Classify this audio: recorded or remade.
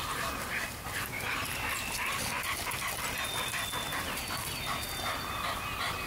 recorded